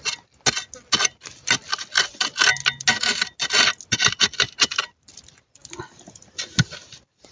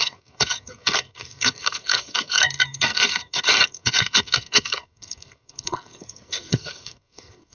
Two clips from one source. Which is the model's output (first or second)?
second